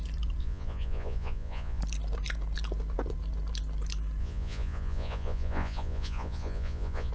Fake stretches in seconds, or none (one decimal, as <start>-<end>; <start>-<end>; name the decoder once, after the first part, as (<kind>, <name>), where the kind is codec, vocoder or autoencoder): 0.4-1.8 (vocoder, Vocos); 4.2-7.1